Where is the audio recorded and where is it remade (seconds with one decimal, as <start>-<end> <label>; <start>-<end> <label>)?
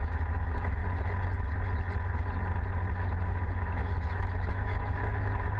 0.0-0.8 remade; 0.8-2.9 recorded; 2.9-5.6 remade